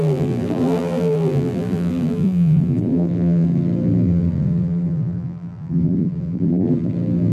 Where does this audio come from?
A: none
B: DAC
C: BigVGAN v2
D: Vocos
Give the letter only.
C